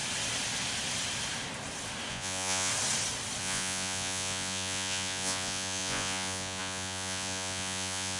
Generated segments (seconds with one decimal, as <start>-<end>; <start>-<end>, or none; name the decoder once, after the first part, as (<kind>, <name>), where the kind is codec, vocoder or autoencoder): 2.1-2.7 (vocoder, Vocos); 3.4-8.2